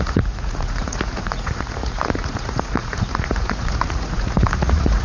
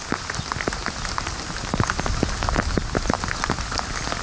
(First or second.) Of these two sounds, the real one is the second